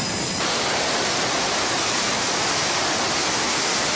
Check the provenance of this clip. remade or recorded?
recorded